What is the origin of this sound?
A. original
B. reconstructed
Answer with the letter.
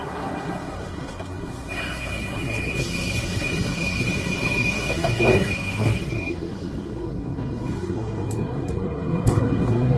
B